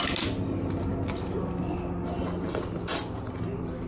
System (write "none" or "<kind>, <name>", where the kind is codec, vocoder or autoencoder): none